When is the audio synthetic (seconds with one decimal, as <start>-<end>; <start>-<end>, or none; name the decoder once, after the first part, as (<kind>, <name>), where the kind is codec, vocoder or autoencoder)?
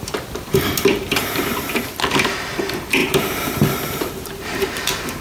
1.2-1.8 (vocoder, BigVGAN v2); 3.0-5.2